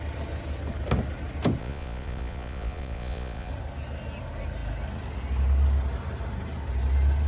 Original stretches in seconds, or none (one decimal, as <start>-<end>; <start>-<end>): 0.0-1.6; 3.5-7.3